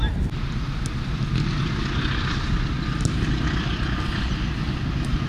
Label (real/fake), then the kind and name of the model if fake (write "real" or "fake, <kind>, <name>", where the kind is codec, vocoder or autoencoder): real